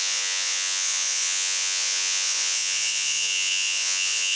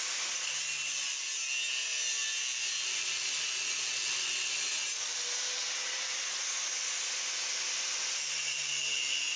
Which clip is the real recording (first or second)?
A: second